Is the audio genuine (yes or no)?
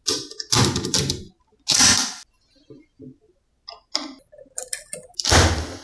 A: yes